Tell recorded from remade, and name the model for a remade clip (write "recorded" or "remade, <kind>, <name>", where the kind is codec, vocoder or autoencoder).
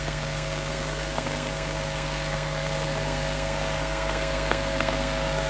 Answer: remade, codec, SNAC